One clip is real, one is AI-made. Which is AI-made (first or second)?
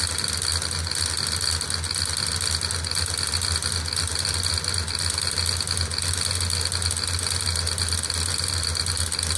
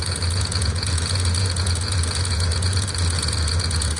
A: second